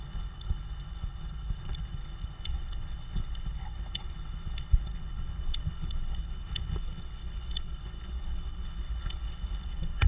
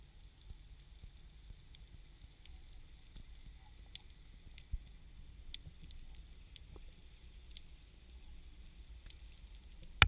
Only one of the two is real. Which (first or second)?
second